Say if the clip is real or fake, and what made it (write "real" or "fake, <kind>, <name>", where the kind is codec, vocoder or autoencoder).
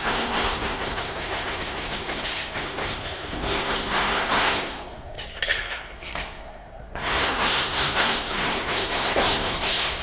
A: fake, codec, SNAC